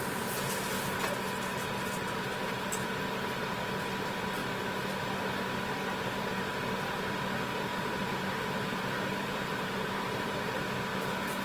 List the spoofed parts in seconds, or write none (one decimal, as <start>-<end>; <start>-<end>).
7.7-10.5